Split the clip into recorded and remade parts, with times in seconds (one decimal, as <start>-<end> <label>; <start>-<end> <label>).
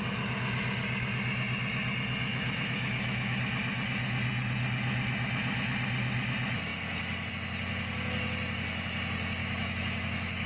0.0-2.3 recorded; 2.3-3.4 remade; 3.4-9.4 recorded; 9.4-10.5 remade